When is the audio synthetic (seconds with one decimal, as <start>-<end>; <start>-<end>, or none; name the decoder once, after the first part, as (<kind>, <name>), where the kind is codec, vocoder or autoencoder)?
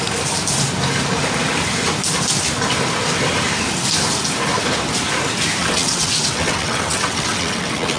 5.6-8.0 (vocoder, WaveNeXt)